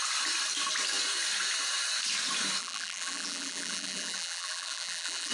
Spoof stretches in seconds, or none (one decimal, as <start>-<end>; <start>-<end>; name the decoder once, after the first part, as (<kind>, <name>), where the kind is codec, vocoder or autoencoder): 2.6-5.3 (vocoder, BigVGAN v2)